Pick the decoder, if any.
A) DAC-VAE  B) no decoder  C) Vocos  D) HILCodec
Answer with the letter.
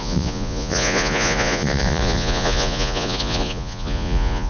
C